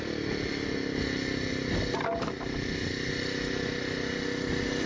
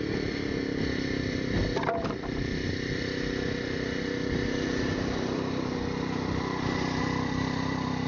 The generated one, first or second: second